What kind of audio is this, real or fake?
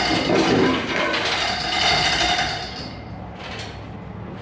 real